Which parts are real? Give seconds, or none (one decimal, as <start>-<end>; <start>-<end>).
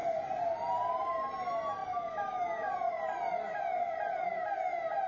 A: 0.0-5.1